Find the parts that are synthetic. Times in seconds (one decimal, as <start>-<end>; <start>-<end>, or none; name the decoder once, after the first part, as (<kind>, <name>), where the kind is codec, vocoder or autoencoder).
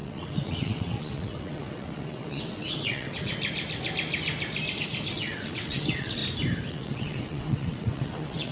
0.0-3.3 (vocoder, WaveNeXt); 5.1-6.2; 6.7-8.5